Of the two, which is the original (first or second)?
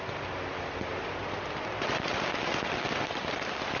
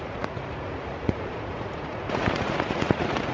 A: first